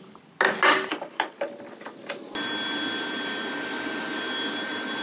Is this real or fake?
real